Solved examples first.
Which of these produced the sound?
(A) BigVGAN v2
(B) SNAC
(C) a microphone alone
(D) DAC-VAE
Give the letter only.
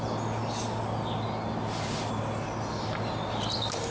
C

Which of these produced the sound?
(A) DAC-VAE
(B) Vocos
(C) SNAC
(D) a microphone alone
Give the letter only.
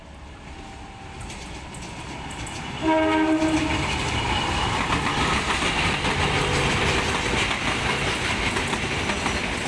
D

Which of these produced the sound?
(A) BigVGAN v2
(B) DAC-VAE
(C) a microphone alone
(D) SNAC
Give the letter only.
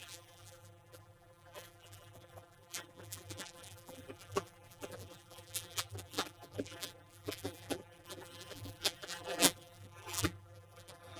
A